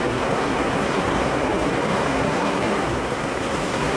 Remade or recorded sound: remade